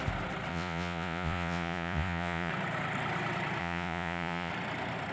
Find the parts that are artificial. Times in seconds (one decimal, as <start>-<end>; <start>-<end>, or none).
0.5-2.5; 3.6-4.5